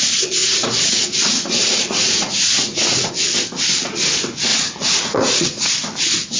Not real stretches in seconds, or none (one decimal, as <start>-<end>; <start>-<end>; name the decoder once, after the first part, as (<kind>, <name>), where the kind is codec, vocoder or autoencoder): 0.4-3.1 (vocoder, Vocos); 4.5-5.7